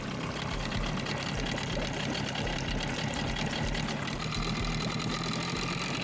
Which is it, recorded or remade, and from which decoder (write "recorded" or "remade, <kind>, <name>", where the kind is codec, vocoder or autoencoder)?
recorded